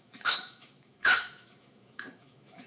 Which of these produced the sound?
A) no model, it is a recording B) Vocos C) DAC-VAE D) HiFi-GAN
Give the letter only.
C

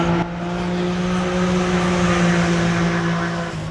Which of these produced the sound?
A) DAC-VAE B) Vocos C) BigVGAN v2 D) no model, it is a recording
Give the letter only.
D